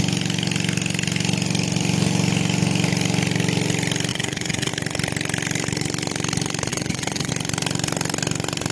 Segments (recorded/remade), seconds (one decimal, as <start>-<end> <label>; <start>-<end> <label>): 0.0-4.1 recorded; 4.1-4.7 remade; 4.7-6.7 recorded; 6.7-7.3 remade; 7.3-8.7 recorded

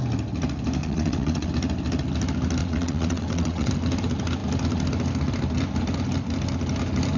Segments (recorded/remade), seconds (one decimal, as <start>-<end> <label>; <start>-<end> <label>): 0.0-0.8 recorded; 0.8-1.5 remade; 1.5-2.6 recorded; 2.6-3.7 remade; 3.7-7.2 recorded

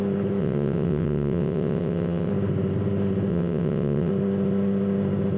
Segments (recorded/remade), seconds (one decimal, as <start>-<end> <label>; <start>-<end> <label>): 0.0-0.4 recorded; 0.4-2.3 remade; 2.3-3.3 recorded; 3.3-4.1 remade; 4.1-5.4 recorded

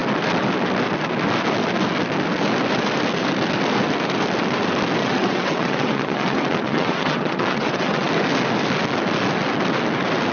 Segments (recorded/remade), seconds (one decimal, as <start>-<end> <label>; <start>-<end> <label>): 0.0-5.0 recorded; 5.0-8.1 remade; 8.1-10.3 recorded